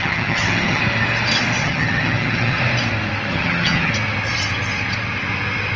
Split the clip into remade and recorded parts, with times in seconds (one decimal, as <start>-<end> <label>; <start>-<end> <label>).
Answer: 0.0-0.8 remade; 0.8-1.6 recorded; 1.6-2.6 remade; 2.6-3.3 recorded; 3.3-3.9 remade; 3.9-5.8 recorded